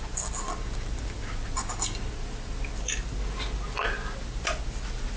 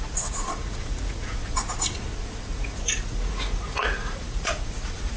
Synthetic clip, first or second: second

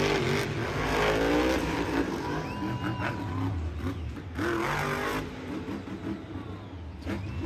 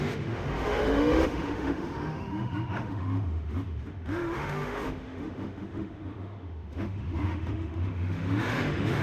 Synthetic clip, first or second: second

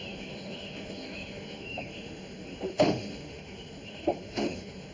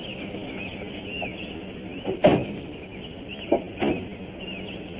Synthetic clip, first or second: first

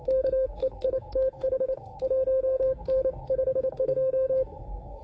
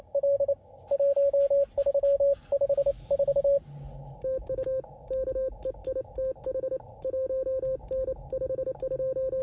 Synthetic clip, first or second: first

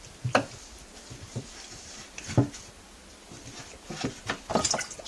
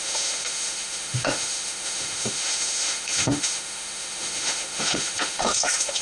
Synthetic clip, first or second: second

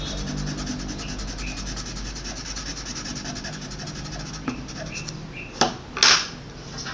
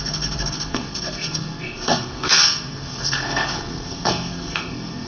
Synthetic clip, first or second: second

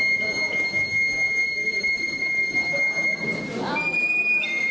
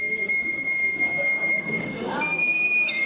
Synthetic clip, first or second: second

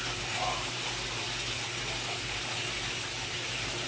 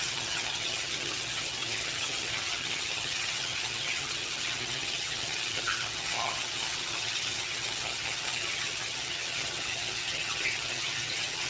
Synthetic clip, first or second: second